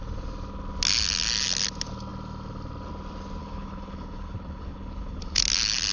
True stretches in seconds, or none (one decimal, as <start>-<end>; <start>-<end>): 0.0-3.4; 5.4-5.9